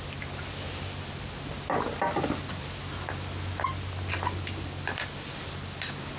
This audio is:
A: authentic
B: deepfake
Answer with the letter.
A